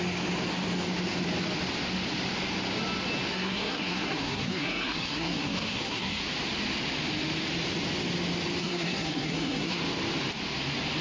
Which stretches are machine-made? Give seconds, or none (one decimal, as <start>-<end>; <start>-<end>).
3.3-6.2; 8.6-9.8